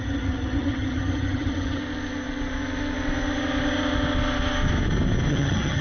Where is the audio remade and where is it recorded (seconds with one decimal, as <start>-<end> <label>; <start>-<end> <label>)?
0.0-1.8 remade; 1.8-5.3 recorded; 5.3-5.8 remade